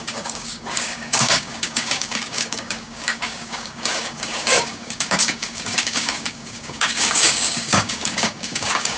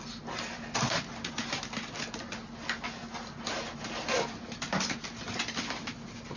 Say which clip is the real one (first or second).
second